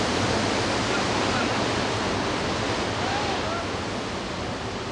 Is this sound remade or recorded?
recorded